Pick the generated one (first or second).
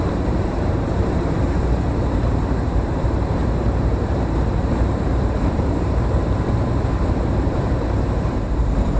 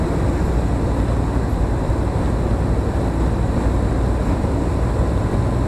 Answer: first